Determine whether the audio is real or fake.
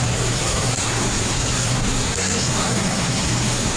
fake